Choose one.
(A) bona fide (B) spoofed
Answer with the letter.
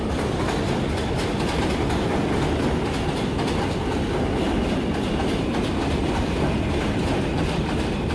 A